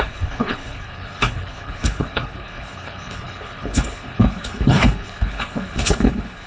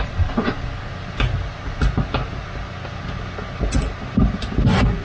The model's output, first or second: first